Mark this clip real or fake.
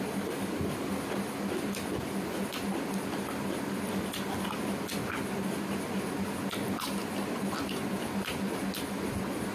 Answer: real